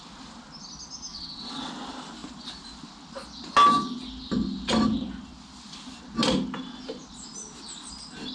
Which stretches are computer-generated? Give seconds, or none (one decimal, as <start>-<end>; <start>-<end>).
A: 1.1-1.7